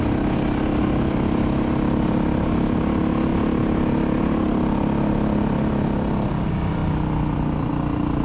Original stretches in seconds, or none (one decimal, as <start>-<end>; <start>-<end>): 0.0-8.2